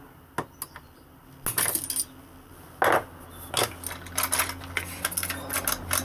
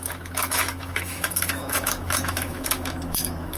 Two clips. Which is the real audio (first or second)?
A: first